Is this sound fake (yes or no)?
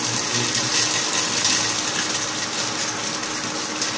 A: no